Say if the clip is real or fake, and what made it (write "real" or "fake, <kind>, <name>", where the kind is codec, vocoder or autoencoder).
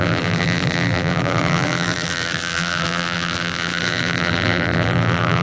fake, vocoder, BigVGAN v2